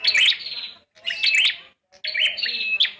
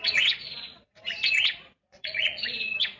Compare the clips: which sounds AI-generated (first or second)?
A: second